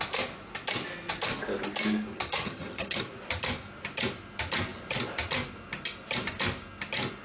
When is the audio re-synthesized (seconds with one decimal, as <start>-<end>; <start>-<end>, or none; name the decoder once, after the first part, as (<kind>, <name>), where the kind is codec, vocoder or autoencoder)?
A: 2.1-3.0 (vocoder, HiFi-GAN)